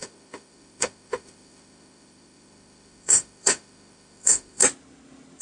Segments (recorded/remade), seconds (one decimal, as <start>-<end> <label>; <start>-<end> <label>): 0.0-4.6 remade; 4.6-5.4 recorded